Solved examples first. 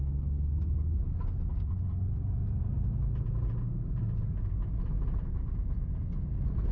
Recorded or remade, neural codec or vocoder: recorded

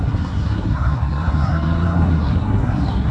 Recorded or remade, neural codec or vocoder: remade, codec, SNAC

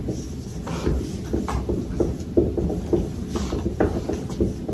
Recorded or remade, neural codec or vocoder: recorded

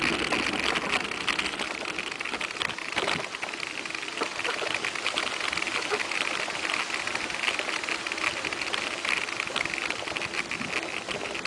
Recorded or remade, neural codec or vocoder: recorded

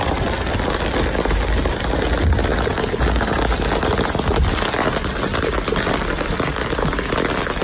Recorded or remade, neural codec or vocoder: recorded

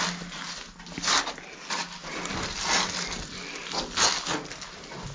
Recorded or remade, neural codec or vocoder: recorded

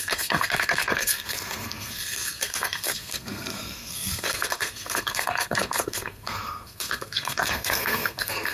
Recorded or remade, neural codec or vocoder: remade, codec, SNAC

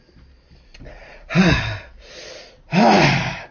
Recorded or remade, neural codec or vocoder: recorded